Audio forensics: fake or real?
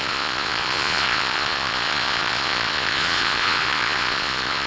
fake